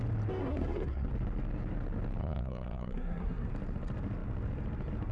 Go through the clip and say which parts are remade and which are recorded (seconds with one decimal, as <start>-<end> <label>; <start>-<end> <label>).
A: 0.0-0.4 recorded; 0.4-1.1 remade; 1.1-2.2 recorded; 2.2-3.5 remade; 3.5-5.1 recorded